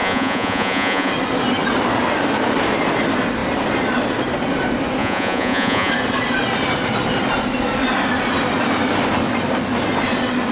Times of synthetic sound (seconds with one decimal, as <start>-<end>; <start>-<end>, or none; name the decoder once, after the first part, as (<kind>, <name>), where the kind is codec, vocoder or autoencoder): 0.0-1.1 (vocoder, Vocos); 5.0-5.9